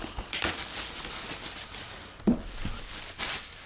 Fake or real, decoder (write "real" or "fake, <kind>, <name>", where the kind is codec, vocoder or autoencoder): real